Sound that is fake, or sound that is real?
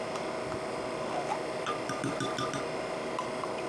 fake